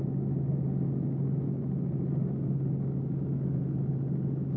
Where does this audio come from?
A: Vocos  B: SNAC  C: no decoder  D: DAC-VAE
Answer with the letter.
C